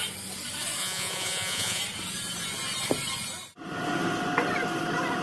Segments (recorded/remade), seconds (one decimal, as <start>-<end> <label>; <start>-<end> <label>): 0.0-0.8 recorded; 0.8-1.8 remade; 1.8-5.2 recorded